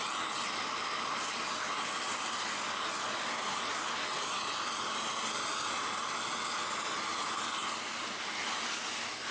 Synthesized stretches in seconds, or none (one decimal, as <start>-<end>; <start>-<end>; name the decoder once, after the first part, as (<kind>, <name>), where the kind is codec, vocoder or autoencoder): none